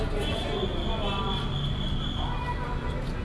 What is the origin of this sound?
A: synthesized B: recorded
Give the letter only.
B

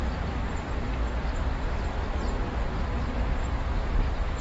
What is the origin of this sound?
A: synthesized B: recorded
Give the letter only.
B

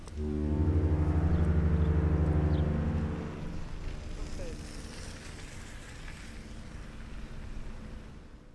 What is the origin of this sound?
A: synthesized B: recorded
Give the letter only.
B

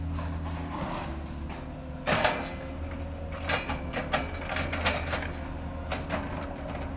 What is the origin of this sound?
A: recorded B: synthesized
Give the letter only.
A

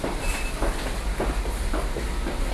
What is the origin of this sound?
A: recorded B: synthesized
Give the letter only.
A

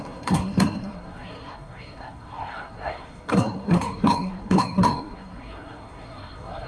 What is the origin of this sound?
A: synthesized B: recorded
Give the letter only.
A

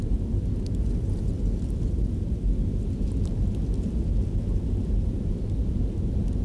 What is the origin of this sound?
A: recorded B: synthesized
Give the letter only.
A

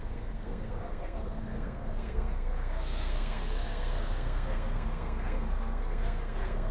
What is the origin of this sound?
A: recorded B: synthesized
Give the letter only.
B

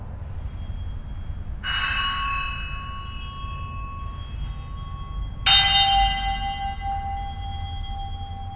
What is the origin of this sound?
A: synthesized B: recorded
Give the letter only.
B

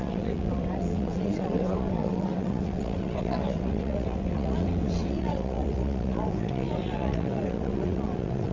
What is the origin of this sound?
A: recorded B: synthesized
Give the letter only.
B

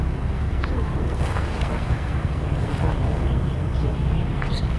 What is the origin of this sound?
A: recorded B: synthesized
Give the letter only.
B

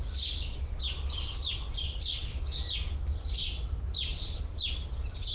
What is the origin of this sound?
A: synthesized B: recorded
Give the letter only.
B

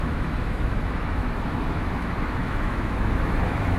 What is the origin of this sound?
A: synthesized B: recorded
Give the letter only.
A